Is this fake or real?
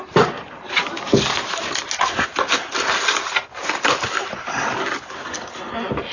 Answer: real